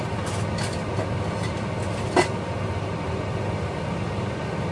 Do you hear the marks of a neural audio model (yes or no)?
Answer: no